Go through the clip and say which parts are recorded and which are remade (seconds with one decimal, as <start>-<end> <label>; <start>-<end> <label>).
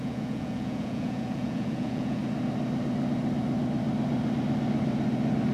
0.0-2.2 remade; 2.2-5.5 recorded